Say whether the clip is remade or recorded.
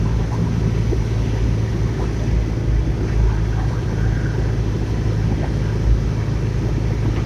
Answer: recorded